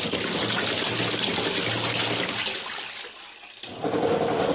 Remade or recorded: recorded